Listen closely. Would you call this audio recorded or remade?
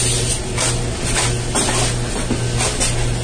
recorded